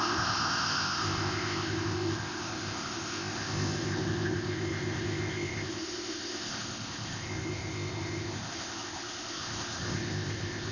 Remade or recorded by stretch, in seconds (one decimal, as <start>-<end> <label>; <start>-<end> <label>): 0.0-10.7 remade